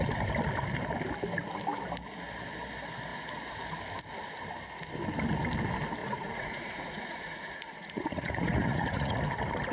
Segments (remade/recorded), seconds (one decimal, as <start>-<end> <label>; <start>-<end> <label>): 0.0-6.0 recorded; 6.0-9.2 remade; 9.2-9.7 recorded